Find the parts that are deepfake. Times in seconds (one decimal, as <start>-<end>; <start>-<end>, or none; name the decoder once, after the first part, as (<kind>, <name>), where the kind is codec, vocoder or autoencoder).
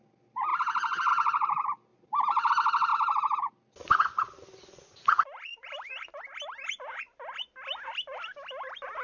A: 1.9-2.5 (vocoder, BigVGAN v2); 5.5-6.2